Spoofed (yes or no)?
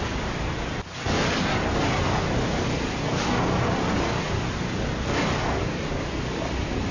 no